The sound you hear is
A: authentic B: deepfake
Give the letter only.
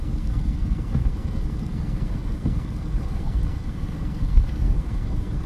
B